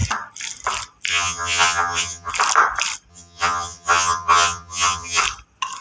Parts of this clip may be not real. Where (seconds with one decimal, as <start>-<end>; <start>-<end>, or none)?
1.1-2.3; 3.1-5.2